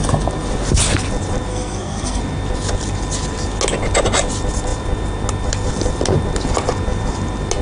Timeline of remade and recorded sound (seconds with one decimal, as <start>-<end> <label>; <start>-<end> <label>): 0.0-1.5 recorded; 1.5-2.2 remade; 2.2-7.6 recorded